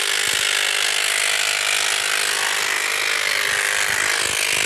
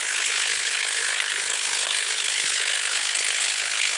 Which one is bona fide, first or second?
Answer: first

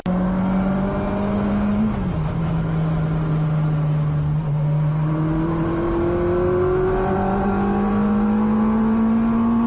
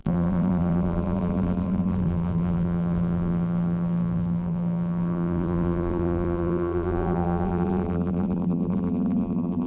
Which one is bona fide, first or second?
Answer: first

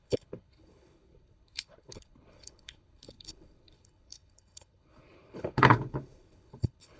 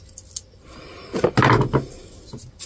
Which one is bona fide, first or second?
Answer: second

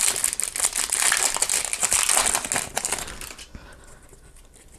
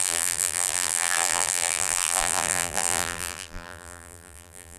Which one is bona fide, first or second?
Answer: first